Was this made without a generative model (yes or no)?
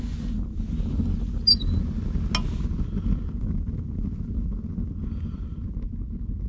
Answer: yes